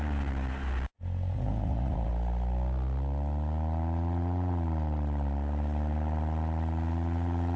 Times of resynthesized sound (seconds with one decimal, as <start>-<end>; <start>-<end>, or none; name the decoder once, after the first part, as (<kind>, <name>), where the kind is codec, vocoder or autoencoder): 1.3-2.1 (vocoder, Vocos)